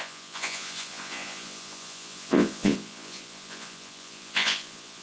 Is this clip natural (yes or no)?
no